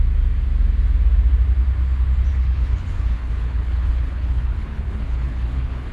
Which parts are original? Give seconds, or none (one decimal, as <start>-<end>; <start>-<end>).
0.0-2.3